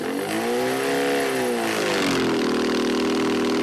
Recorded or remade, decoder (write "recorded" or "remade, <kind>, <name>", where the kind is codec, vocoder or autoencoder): recorded